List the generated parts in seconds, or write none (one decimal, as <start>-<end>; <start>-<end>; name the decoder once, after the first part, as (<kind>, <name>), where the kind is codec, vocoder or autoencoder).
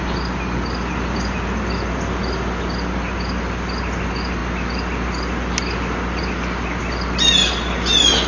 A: none